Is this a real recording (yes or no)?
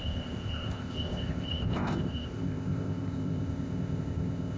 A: no